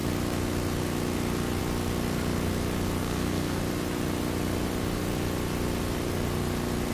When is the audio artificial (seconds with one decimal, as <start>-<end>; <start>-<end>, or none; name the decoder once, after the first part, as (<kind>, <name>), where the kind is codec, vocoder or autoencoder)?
3.0-3.6 (codec, SNAC)